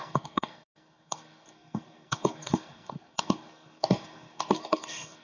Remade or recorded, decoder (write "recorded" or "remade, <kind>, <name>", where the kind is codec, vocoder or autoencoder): remade, codec, SNAC